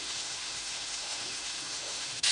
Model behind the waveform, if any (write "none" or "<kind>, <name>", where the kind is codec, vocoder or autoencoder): autoencoder, DAC-VAE